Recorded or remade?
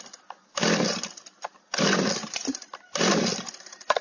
remade